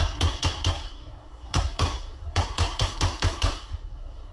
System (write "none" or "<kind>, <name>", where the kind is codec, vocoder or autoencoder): codec, SNAC